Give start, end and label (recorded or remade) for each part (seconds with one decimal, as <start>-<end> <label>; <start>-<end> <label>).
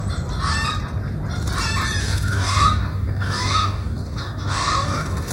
0.0-2.0 recorded; 2.0-5.3 remade